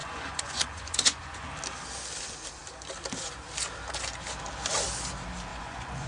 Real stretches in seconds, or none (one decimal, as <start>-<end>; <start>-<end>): 1.5-5.5